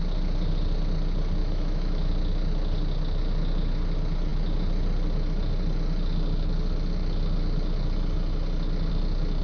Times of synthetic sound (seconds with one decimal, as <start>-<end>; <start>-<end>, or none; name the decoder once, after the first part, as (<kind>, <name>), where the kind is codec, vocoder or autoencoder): 1.4-2.1 (autoencoder, DAC-VAE)